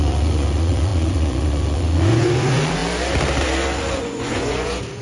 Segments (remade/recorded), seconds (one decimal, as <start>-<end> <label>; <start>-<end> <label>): 0.0-2.8 remade; 2.8-3.9 recorded; 3.9-5.0 remade

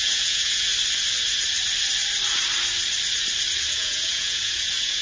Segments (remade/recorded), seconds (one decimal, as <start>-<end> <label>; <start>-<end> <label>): 0.0-0.7 remade; 0.7-3.7 recorded; 3.7-5.0 remade

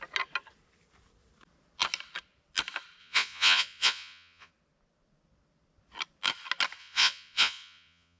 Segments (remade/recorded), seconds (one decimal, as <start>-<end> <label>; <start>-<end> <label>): 0.0-3.0 recorded; 3.0-4.5 remade; 4.5-6.8 recorded; 6.8-8.2 remade

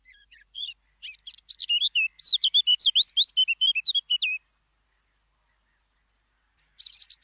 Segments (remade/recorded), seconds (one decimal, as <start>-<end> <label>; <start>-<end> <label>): 0.0-0.7 remade; 0.7-7.2 recorded

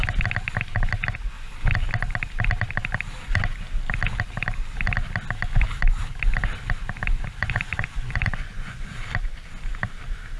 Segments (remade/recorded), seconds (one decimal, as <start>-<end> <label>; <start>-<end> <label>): 0.0-7.4 recorded; 7.4-8.9 remade; 8.9-10.4 recorded